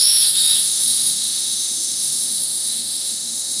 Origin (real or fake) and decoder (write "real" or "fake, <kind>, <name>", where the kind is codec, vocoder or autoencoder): fake, autoencoder, DAC-VAE